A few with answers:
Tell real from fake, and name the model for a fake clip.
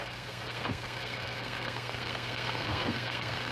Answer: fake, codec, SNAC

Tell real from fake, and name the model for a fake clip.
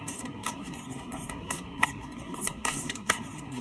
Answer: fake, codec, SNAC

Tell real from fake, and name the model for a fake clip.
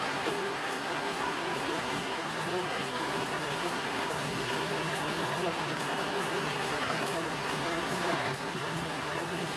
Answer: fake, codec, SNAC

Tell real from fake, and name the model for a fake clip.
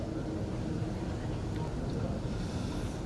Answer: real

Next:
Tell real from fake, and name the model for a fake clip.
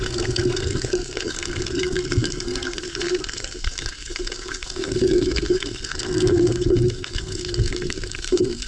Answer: fake, codec, SNAC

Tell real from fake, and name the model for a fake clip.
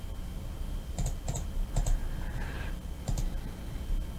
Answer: real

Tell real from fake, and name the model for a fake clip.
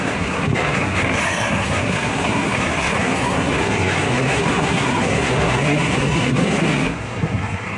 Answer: fake, codec, SNAC